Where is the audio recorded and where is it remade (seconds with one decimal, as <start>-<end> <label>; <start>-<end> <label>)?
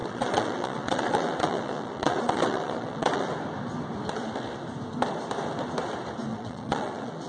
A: 0.0-3.3 remade; 3.3-6.3 recorded; 6.3-7.3 remade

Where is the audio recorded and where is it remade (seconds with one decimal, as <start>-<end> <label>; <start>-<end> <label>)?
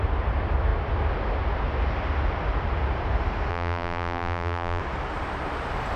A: 0.0-3.5 recorded; 3.5-4.8 remade; 4.8-6.0 recorded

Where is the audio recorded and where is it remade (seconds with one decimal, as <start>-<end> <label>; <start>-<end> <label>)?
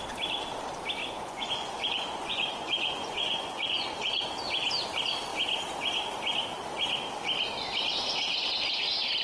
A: 0.0-1.0 recorded; 1.0-4.3 remade; 4.3-9.2 recorded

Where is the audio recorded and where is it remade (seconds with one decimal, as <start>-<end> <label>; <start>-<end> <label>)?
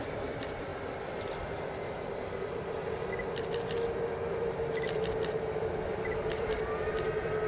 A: 0.0-0.7 remade; 0.7-4.4 recorded; 4.4-7.5 remade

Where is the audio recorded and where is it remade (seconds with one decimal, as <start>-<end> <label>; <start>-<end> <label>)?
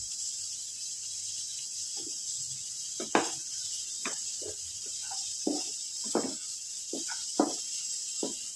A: 0.0-8.6 recorded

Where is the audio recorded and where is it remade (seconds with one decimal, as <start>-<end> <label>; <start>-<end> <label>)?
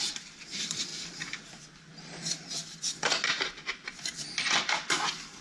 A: 0.0-5.4 remade